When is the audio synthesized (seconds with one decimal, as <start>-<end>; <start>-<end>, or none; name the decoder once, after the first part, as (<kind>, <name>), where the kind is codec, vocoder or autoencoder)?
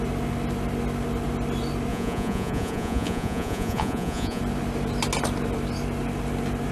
1.9-4.4 (vocoder, Vocos)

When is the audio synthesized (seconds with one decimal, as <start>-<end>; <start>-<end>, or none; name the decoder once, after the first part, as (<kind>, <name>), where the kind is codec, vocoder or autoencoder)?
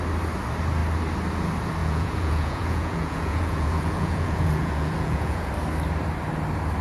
1.8-5.5 (vocoder, Vocos)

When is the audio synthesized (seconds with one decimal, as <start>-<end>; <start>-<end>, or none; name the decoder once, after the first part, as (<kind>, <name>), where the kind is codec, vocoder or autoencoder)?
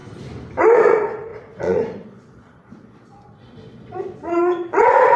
0.6-5.2 (vocoder, Vocos)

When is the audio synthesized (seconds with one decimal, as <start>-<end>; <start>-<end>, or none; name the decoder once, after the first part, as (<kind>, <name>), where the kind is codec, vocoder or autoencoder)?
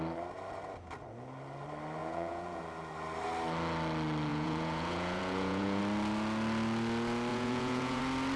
2.0-2.6 (vocoder, Vocos); 4.3-5.8; 7.3-8.0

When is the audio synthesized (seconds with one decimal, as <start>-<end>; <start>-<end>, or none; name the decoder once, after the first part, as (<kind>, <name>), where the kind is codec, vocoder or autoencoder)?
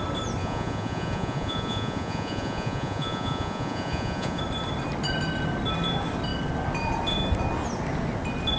0.4-4.4 (vocoder, Vocos)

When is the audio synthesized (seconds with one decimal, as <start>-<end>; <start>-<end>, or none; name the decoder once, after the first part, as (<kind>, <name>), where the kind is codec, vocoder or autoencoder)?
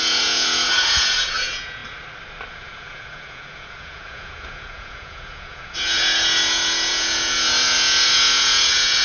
0.0-1.8 (vocoder, Vocos); 2.5-9.0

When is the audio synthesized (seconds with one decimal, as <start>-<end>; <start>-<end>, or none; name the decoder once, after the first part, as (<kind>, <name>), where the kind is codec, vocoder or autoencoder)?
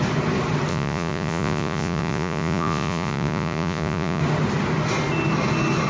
0.7-4.2 (vocoder, Vocos)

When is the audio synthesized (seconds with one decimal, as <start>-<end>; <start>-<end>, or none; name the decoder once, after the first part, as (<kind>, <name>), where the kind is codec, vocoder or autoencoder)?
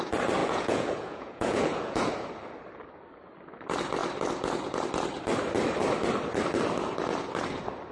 0.4-2.1 (vocoder, Vocos)